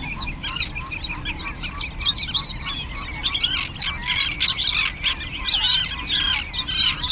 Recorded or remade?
recorded